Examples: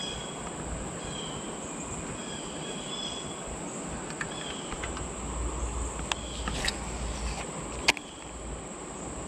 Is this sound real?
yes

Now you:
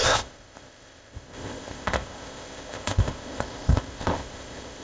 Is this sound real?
no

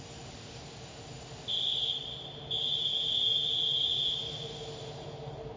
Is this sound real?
yes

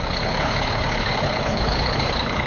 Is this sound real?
no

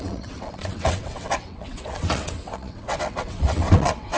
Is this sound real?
no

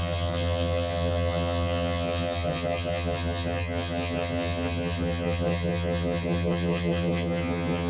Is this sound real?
no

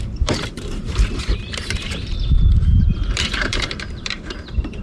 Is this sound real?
no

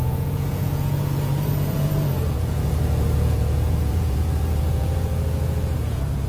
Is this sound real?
no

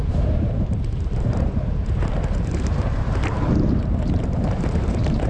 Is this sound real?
no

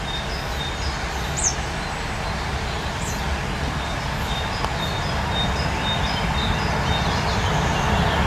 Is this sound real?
yes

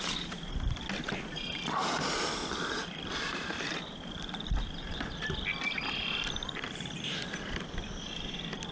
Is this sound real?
yes